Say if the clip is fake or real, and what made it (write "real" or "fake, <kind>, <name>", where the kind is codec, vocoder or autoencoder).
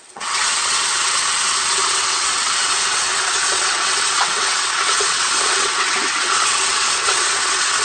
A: fake, vocoder, WaveNeXt